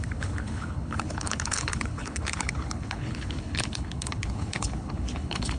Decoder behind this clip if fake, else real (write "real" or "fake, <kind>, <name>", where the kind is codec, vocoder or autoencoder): fake, codec, HILCodec